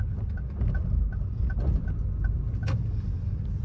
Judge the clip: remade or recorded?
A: recorded